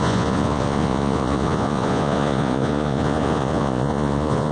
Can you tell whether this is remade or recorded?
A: remade